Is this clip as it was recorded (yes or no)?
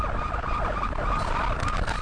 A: yes